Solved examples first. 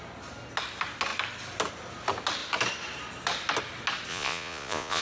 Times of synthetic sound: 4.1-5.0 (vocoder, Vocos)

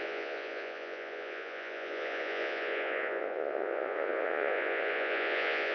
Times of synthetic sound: 0.0-5.7 (vocoder, Vocos)